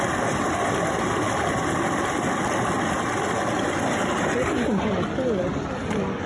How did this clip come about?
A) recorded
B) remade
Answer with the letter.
A